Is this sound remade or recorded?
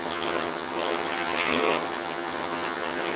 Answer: remade